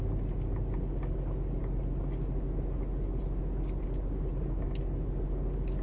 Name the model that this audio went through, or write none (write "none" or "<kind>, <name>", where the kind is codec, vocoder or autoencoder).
none